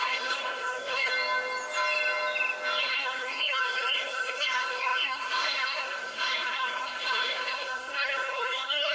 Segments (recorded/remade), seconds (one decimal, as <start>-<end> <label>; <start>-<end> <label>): 0.0-1.1 remade; 1.1-2.8 recorded; 2.8-8.9 remade